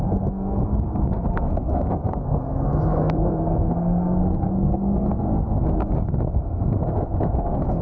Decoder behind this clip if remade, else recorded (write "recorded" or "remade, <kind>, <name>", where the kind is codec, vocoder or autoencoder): remade, codec, SNAC